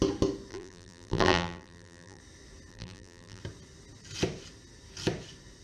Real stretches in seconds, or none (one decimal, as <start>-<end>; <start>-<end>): 0.0-0.5; 2.2-2.7; 3.4-5.6